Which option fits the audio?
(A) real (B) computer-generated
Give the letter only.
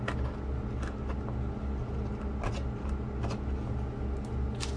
A